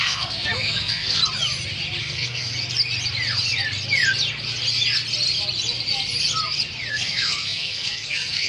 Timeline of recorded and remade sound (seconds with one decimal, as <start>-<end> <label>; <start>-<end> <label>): 0.0-1.2 remade; 1.2-2.0 recorded; 2.0-2.5 remade; 2.5-6.9 recorded; 6.9-8.5 remade